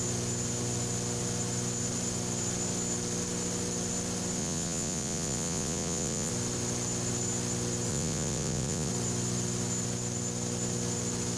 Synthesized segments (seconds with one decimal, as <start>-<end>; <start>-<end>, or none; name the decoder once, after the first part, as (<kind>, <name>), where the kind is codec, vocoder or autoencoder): 4.4-6.3 (vocoder, Vocos); 7.9-8.9